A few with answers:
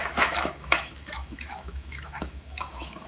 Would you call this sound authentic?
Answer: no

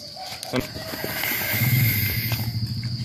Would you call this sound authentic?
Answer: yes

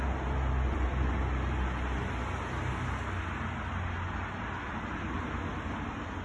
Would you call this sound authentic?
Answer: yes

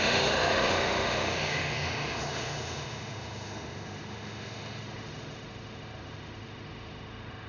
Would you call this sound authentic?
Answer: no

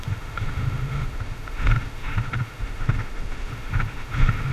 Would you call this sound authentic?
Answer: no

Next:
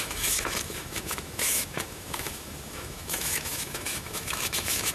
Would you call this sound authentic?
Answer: no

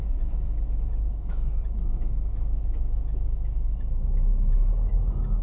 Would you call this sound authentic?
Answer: no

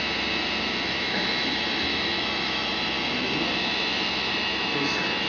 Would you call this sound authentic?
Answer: no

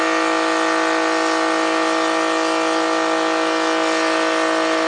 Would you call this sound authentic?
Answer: yes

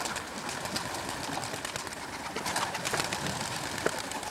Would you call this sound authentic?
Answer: yes